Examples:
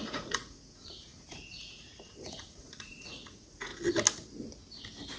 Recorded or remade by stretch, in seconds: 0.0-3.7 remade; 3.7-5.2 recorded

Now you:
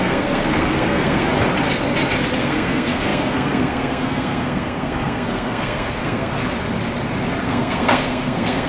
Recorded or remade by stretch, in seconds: 0.0-1.3 remade; 1.3-2.4 recorded; 2.4-6.3 remade; 6.3-7.4 recorded; 7.4-8.7 remade

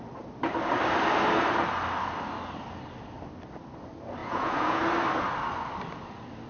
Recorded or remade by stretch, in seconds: 0.0-4.2 recorded; 4.2-4.8 remade; 4.8-6.5 recorded

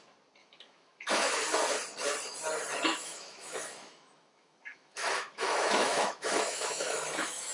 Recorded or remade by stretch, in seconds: 0.0-0.4 recorded; 0.4-1.4 remade; 1.4-2.9 recorded; 2.9-7.5 remade

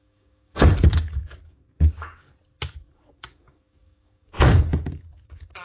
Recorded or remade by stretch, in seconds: 0.0-2.3 remade; 2.3-2.9 recorded; 2.9-5.6 remade